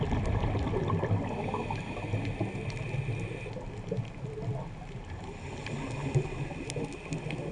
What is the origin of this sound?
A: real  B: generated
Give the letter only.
A